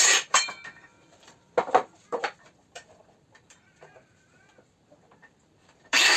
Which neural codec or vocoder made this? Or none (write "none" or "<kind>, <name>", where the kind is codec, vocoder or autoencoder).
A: vocoder, BigVGAN v2